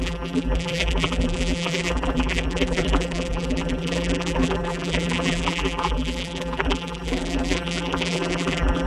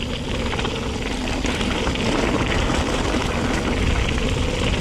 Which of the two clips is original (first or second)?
second